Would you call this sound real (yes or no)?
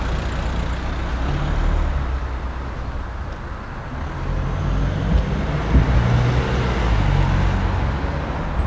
yes